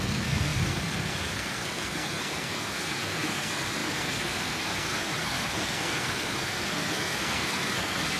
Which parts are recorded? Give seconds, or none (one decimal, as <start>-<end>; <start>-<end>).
none